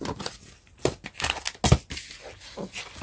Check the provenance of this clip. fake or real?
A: real